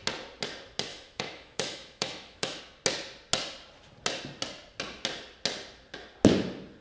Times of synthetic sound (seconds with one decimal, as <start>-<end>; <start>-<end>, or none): 0.9-2.6